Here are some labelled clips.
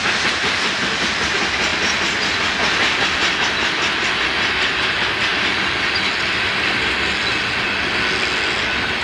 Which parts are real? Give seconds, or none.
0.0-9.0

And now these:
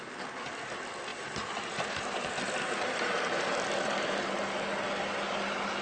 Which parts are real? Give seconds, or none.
0.0-1.1; 4.6-5.8

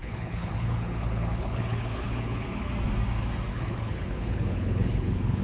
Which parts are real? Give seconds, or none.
2.6-3.5

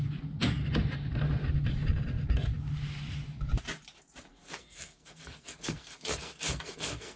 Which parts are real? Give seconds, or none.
0.0-4.3

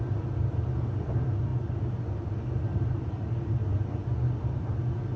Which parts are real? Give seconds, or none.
0.0-5.2

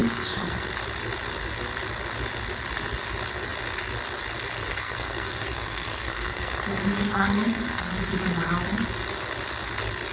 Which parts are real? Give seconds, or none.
0.7-4.7; 7.9-10.1

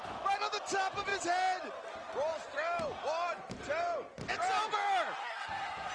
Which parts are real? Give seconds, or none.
0.0-5.2

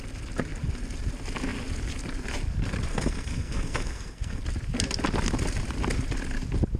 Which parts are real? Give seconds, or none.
0.0-2.9; 4.4-6.8